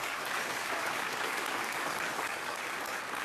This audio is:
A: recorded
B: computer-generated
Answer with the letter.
B